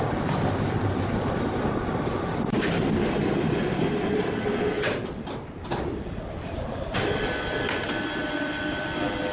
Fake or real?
real